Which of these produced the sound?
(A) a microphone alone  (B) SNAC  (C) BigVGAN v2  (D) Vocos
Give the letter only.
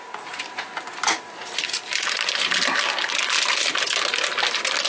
A